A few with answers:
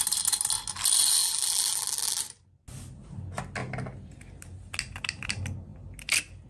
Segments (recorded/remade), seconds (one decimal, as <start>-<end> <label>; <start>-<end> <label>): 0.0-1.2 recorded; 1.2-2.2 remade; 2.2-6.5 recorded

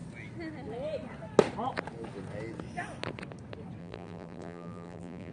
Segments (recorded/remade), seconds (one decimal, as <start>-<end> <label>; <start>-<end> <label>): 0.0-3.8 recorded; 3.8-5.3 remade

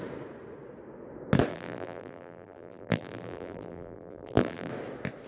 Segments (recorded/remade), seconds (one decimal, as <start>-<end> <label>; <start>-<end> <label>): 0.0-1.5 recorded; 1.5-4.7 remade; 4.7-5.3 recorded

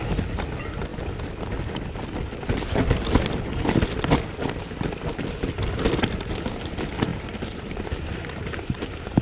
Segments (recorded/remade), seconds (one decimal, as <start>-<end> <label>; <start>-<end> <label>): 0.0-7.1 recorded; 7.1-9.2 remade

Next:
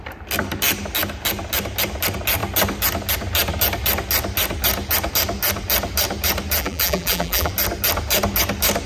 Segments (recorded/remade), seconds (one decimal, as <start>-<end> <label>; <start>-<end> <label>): 0.0-6.6 recorded; 6.6-7.5 remade; 7.5-8.9 recorded